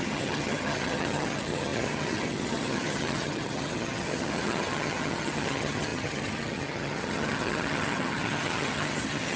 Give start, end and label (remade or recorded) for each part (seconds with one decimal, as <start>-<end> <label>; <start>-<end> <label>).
0.0-9.4 remade